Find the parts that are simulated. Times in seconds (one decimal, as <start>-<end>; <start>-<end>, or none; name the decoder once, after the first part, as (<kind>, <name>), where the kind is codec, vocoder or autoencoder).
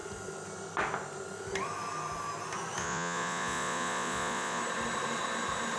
2.8-4.6 (vocoder, Vocos)